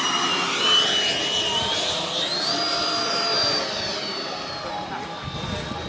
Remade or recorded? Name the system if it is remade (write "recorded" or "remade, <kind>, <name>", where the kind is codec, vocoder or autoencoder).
recorded